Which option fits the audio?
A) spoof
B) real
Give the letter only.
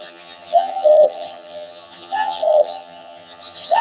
A